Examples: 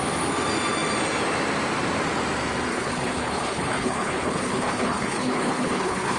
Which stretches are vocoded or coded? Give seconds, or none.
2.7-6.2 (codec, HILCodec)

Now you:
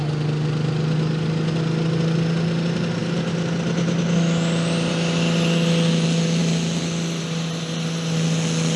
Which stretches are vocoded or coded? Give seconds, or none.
none